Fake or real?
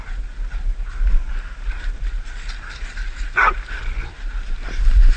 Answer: real